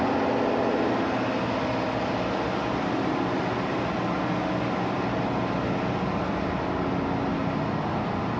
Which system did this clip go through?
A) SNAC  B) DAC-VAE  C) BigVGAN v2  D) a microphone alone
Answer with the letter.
D